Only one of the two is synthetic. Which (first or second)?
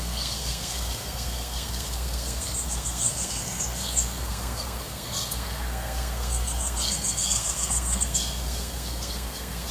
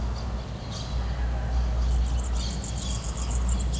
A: first